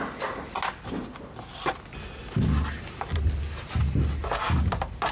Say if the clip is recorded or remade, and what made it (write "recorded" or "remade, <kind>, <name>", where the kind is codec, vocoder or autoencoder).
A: recorded